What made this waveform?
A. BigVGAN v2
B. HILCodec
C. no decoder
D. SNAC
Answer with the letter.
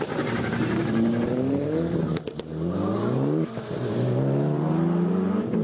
A